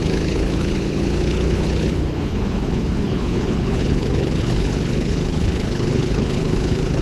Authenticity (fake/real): fake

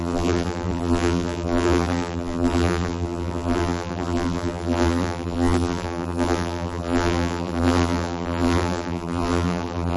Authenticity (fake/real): fake